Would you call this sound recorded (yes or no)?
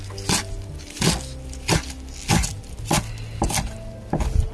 yes